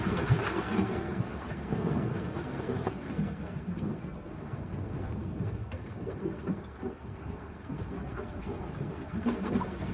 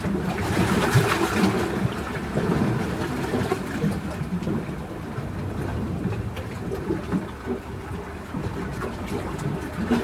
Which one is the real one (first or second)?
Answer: second